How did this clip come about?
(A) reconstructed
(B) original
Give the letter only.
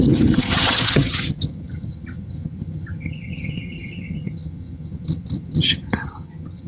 A